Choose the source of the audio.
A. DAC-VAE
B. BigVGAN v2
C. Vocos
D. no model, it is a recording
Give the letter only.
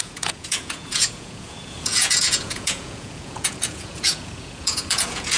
C